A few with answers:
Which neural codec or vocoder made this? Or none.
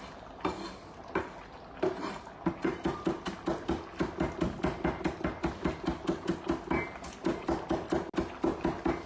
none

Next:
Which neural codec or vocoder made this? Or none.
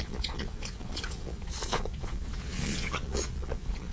vocoder, Vocos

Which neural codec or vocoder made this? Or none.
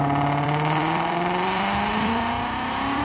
vocoder, BigVGAN v2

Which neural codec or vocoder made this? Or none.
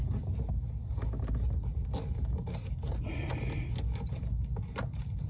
none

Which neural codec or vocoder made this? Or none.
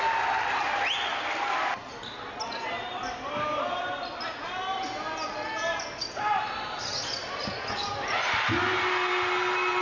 none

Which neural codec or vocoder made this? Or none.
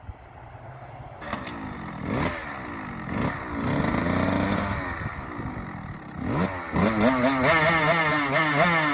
none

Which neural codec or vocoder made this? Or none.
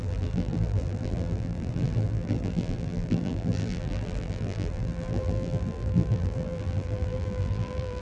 vocoder, BigVGAN v2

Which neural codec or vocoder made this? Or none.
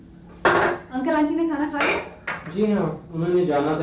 none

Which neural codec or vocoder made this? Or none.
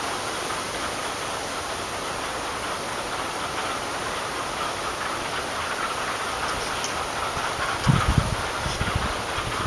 none